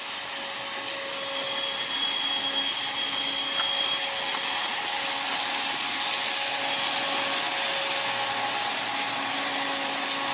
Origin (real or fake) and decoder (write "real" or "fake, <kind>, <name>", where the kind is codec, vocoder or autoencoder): real